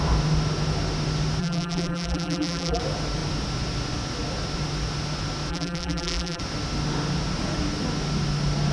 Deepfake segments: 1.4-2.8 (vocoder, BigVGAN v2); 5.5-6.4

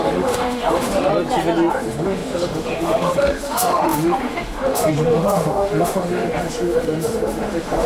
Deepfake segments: 0.0-1.1 (autoencoder, DAC-VAE); 1.7-7.9

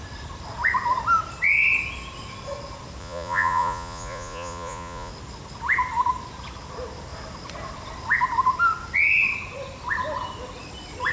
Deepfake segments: 3.0-5.1 (vocoder, Vocos)

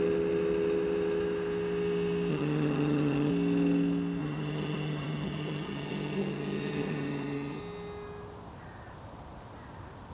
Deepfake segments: 2.3-3.3 (vocoder, HiFi-GAN); 4.2-7.6

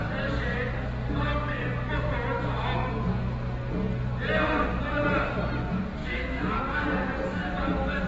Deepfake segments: 6.0-6.6 (autoencoder, DAC-VAE)

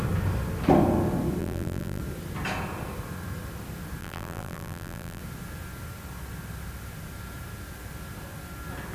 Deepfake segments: 1.4-2.0 (vocoder, BigVGAN v2); 4.0-5.2